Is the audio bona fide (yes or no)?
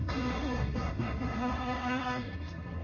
no